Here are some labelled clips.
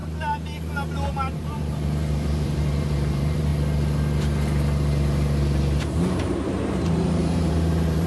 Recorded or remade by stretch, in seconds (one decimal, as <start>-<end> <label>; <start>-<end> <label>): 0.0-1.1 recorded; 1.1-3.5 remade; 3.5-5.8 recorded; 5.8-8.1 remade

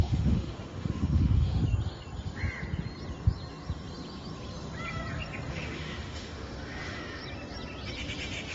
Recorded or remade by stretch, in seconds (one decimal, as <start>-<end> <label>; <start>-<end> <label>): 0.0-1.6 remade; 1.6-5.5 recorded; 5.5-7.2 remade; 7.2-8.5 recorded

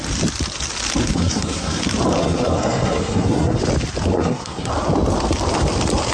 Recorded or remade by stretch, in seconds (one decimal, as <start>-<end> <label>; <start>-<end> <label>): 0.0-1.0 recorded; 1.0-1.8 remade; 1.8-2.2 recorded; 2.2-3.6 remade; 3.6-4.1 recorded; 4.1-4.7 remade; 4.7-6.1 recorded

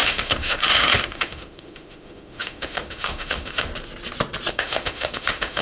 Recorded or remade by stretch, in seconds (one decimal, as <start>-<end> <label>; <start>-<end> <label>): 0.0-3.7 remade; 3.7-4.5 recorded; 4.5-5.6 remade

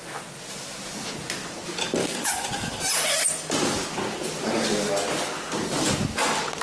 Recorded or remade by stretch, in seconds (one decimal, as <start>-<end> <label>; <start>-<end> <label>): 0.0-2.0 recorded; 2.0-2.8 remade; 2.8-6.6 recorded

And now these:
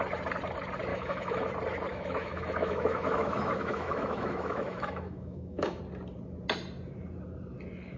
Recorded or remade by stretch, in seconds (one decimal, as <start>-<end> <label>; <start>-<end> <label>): 0.0-0.9 recorded; 0.9-1.5 remade; 1.5-1.9 recorded; 1.9-5.8 remade; 5.8-8.0 recorded

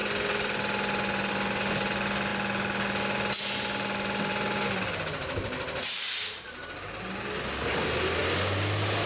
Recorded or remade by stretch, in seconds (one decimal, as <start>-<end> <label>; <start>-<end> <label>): 0.0-9.1 recorded